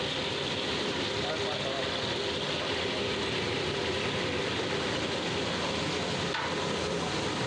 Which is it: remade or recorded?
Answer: recorded